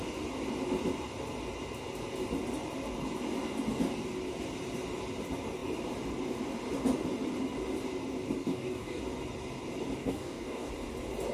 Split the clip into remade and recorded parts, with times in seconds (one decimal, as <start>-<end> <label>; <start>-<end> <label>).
0.0-8.4 recorded; 8.4-9.0 remade; 9.0-10.0 recorded; 10.0-10.7 remade; 10.7-11.3 recorded